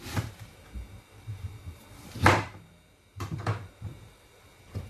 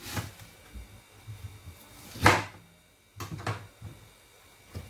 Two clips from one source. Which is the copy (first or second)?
first